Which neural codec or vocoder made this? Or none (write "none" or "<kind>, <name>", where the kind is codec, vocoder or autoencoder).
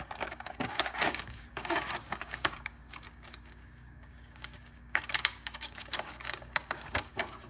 codec, DAC